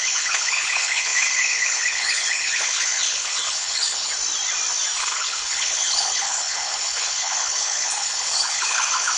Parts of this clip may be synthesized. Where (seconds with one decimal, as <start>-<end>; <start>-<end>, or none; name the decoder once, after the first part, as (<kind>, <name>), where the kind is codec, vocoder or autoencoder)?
0.0-4.1 (codec, HILCodec); 5.0-9.2